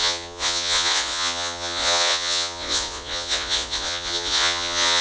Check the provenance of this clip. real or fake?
fake